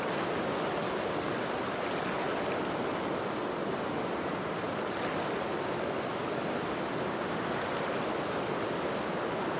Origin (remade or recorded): recorded